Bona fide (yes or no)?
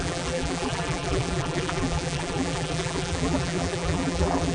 no